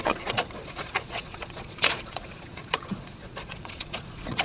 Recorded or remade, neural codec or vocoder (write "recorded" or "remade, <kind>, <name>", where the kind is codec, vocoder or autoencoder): remade, vocoder, Vocos